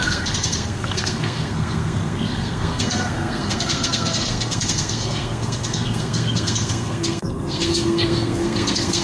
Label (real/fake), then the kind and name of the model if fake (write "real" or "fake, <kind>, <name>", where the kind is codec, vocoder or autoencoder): fake, codec, SNAC